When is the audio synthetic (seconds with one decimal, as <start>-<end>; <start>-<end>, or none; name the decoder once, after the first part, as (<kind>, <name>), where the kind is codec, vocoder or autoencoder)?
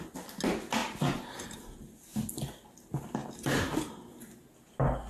0.8-1.6 (vocoder, BigVGAN v2)